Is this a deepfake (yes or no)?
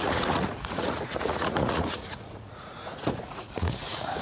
yes